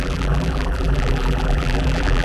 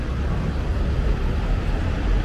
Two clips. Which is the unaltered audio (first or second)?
second